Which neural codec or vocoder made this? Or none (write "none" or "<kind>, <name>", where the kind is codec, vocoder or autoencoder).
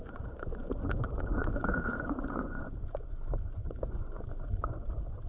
vocoder, Vocos